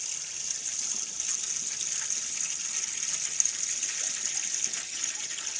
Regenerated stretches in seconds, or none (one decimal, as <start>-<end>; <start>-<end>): none